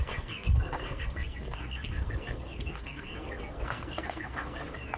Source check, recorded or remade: remade